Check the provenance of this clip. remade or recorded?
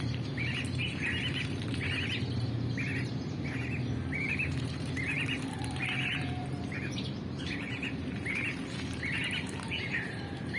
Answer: remade